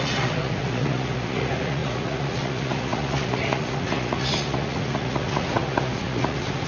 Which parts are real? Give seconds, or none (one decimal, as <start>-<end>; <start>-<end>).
none